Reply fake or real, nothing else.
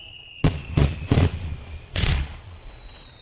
fake